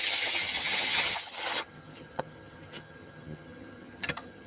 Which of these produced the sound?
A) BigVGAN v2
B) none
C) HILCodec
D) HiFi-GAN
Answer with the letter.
D